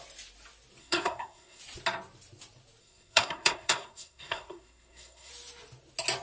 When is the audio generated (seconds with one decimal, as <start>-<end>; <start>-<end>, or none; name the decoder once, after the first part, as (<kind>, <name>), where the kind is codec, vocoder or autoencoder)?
0.8-1.6 (codec, SNAC); 2.8-5.3